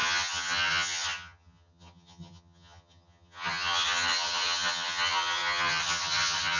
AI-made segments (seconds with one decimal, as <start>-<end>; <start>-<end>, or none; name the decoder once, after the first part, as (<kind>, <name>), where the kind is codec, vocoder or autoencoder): 0.0-6.6 (vocoder, HiFi-GAN)